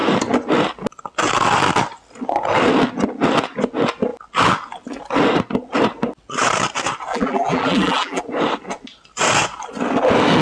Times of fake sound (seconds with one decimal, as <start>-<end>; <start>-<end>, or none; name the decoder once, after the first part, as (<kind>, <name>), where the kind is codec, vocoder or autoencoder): 7.1-8.2 (vocoder, BigVGAN v2)